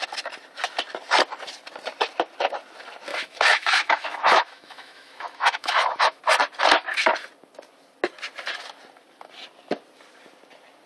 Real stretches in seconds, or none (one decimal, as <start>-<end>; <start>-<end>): 0.0-3.1; 6.2-10.9